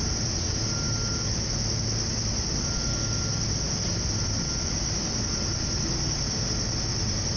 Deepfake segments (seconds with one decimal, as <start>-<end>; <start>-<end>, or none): none